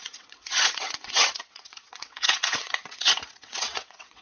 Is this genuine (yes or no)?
no